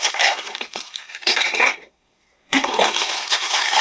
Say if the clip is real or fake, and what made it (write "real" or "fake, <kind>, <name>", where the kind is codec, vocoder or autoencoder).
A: fake, codec, SNAC